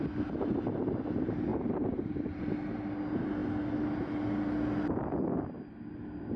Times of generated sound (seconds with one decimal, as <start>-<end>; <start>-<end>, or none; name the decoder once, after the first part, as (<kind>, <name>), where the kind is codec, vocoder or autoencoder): 1.5-2.4 (vocoder, BigVGAN v2)